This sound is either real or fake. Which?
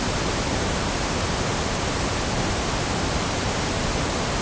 real